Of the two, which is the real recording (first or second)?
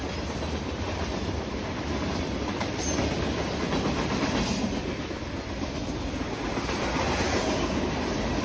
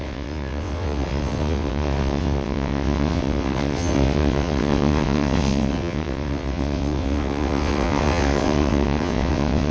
first